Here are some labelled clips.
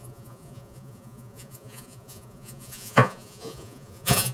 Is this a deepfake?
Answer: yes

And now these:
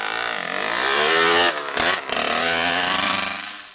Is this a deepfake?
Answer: no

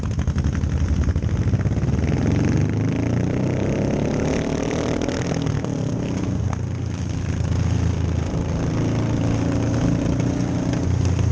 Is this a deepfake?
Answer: no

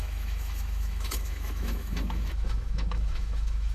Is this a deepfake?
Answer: yes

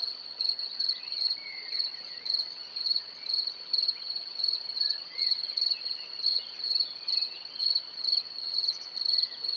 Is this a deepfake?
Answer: yes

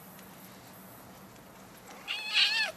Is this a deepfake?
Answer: no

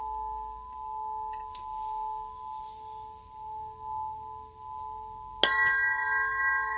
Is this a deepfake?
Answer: no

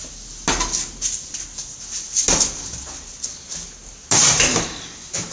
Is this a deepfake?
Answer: no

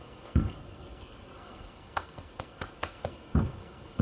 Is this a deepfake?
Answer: yes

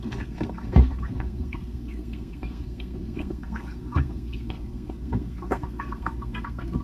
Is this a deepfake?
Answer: yes